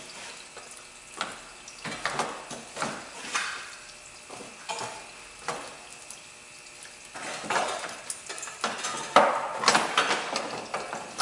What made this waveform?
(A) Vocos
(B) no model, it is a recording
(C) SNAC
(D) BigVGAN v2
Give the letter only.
B